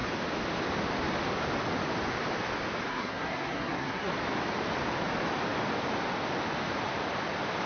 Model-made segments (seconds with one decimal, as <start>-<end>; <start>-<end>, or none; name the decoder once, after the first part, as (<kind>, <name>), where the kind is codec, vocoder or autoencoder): 2.9-4.1 (codec, SNAC)